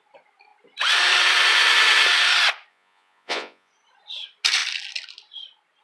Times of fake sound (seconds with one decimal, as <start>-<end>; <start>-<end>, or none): 2.7-3.7